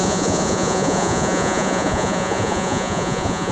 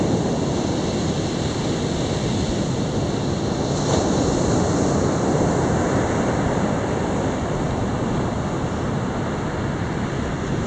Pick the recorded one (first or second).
second